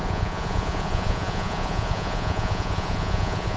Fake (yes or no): yes